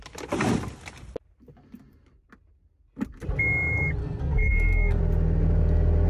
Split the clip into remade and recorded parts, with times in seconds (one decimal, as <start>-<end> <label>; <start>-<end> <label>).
0.0-4.0 recorded; 4.0-5.0 remade; 5.0-6.1 recorded